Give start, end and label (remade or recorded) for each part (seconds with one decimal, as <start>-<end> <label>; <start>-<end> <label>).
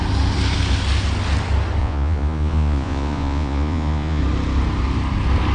0.0-1.8 recorded; 1.8-4.2 remade; 4.2-5.5 recorded